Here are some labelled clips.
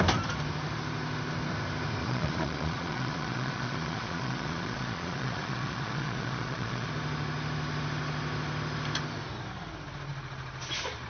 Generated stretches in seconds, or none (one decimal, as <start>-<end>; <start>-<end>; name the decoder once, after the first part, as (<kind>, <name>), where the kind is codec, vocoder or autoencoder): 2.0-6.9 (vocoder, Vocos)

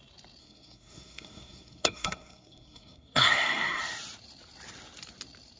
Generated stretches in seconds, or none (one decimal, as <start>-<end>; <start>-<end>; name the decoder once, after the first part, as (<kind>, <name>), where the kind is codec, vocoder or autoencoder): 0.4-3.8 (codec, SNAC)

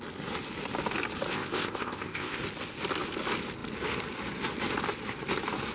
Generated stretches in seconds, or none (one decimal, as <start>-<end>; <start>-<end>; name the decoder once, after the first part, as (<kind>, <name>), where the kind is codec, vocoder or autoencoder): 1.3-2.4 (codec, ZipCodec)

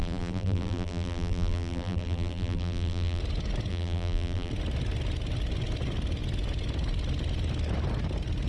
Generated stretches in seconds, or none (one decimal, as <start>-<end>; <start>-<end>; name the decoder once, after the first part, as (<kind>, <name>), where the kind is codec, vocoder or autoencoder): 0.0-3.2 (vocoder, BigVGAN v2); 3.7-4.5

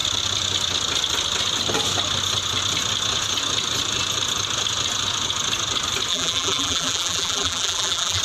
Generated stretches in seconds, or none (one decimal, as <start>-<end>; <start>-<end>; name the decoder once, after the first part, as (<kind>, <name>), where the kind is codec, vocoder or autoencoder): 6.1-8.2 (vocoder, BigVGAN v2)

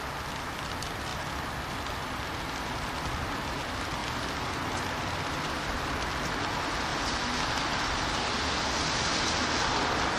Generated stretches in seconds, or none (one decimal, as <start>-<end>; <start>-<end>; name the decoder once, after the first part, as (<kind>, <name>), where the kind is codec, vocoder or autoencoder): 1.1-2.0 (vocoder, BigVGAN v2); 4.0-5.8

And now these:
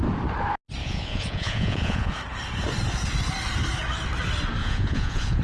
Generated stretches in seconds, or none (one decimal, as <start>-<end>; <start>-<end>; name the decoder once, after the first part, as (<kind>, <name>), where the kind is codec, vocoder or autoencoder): 0.8-2.1 (vocoder, Vocos); 4.6-5.4